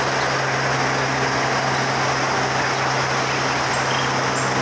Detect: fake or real real